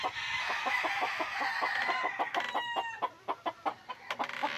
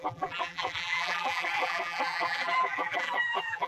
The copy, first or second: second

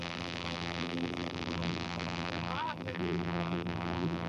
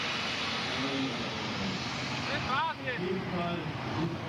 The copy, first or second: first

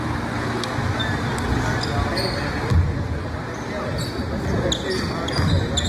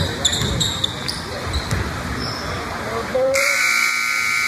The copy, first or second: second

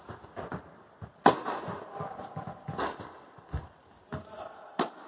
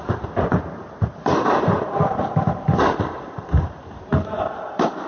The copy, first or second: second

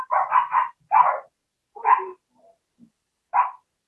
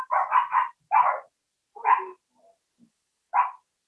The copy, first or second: first